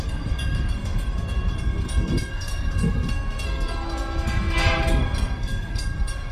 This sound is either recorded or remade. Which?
remade